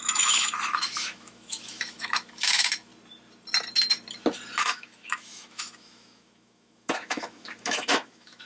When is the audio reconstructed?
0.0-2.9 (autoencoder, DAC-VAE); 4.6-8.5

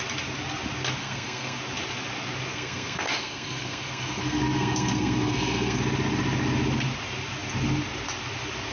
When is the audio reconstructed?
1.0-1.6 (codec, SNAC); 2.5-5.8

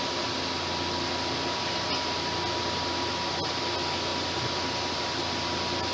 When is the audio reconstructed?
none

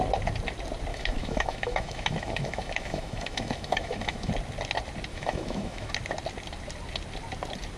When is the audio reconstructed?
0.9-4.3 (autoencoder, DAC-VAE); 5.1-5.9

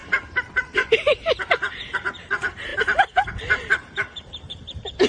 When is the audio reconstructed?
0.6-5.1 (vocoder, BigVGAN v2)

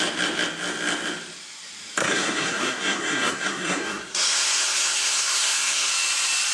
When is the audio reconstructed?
2.0-5.9 (codec, SNAC)

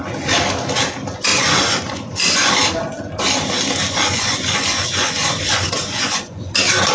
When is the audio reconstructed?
1.3-2.5 (vocoder, Vocos); 3.9-6.5